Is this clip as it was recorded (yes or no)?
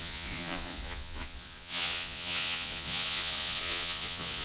no